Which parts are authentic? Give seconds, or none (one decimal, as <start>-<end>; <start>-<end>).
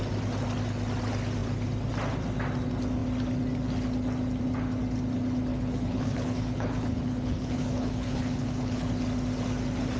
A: 0.0-5.5; 8.9-10.0